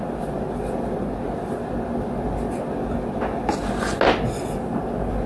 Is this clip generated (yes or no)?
no